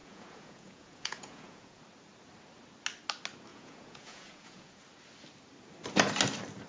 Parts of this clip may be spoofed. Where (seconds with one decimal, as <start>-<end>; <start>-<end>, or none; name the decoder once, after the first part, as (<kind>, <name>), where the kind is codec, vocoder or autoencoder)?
0.0-1.8 (vocoder, Vocos); 3.5-4.8